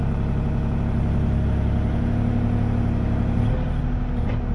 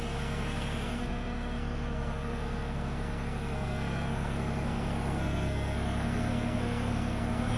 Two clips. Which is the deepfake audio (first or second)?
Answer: second